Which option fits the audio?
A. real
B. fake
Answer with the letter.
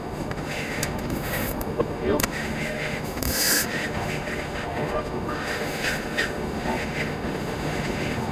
B